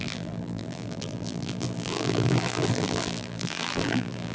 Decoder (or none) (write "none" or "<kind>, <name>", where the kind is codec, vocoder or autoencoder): vocoder, BigVGAN v2